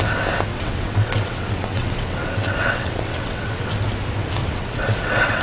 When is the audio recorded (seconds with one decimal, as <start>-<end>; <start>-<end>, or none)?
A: 0.0-0.5; 3.7-4.4